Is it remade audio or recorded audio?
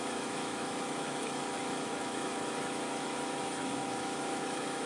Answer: remade